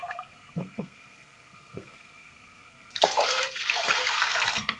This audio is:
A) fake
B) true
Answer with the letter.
A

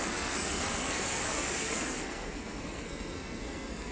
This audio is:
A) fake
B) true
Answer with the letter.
A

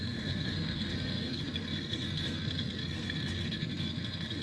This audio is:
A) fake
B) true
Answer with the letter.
A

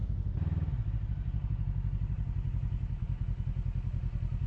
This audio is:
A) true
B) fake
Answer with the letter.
A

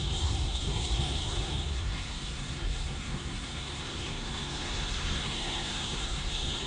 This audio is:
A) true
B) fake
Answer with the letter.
B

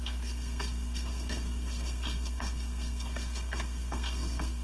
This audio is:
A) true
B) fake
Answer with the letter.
B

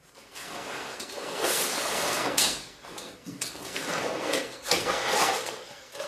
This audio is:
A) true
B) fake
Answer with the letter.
B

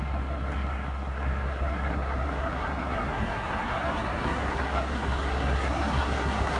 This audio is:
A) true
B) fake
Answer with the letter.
B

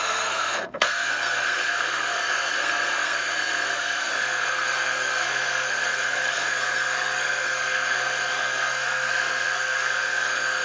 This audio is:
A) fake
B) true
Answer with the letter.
A